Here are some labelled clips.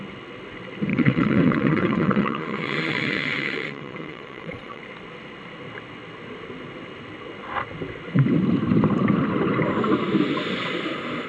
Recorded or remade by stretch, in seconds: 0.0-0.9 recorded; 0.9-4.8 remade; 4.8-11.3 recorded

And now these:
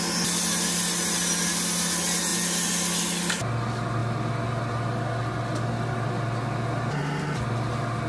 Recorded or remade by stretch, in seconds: 0.0-8.1 recorded

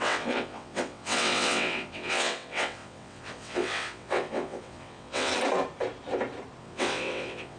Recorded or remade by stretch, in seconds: 0.0-5.3 remade; 5.3-6.6 recorded; 6.6-7.6 remade

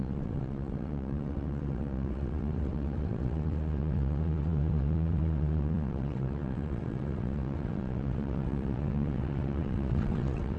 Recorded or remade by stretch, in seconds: 0.0-10.6 remade

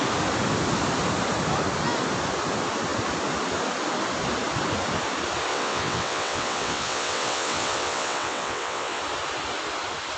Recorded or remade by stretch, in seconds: 0.0-5.5 recorded; 5.5-9.0 remade; 9.0-10.2 recorded

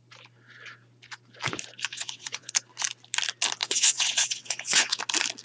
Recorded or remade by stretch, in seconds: 0.0-1.9 recorded; 1.9-2.5 remade; 2.5-3.6 recorded; 3.6-5.0 remade; 5.0-5.4 recorded

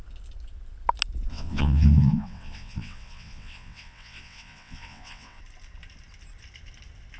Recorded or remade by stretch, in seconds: 0.0-1.3 recorded; 1.3-5.4 remade; 5.4-7.2 recorded